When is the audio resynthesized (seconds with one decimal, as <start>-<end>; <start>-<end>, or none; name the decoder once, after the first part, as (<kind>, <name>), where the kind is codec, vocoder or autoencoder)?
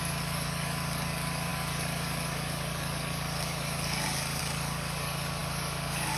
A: 0.0-6.2 (codec, DAC)